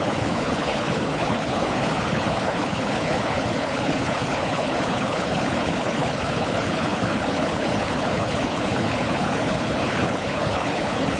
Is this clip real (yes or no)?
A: no